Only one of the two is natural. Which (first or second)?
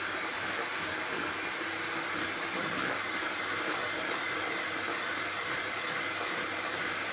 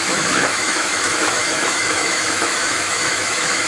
first